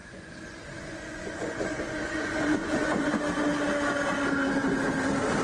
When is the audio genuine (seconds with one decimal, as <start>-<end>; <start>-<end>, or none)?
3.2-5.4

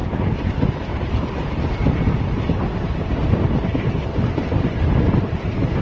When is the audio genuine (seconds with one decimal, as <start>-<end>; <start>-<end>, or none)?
0.0-5.8

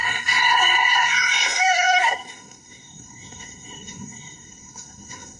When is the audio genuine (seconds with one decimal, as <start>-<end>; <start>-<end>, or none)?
none